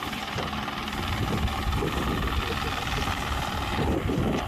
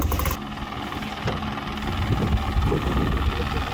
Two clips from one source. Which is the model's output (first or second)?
first